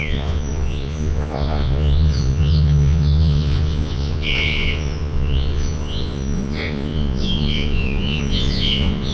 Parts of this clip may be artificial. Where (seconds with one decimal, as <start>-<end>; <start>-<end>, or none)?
0.0-9.1